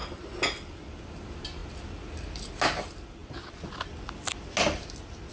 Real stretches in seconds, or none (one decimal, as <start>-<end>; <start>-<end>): 0.0-5.3